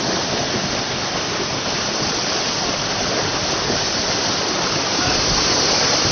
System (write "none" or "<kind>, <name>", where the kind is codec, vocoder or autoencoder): none